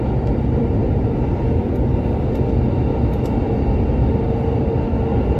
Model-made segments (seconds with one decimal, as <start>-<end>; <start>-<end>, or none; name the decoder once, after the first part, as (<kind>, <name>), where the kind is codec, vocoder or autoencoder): none